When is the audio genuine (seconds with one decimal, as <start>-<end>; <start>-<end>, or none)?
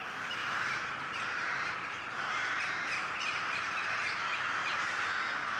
0.0-0.4; 3.8-4.6; 5.1-5.6